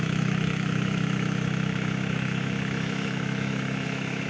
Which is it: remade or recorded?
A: remade